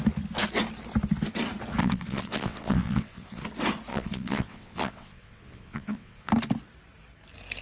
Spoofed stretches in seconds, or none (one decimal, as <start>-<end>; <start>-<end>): 1.8-3.4; 3.9-6.3